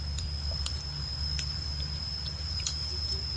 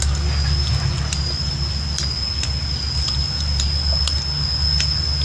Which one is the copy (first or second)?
first